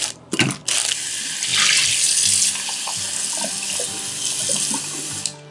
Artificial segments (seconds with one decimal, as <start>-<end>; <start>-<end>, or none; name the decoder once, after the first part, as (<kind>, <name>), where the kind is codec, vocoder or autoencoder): none